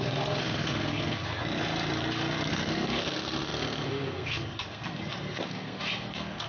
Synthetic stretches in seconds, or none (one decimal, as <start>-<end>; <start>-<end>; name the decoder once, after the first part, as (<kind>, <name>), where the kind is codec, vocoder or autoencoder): 0.0-1.3 (codec, SNAC); 2.5-6.5